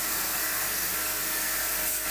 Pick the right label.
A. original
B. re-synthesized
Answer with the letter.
B